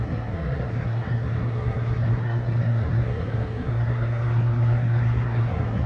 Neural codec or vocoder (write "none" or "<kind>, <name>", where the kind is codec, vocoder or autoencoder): codec, SNAC